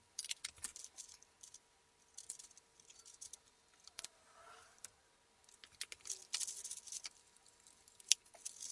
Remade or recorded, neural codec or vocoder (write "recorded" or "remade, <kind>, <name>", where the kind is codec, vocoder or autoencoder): recorded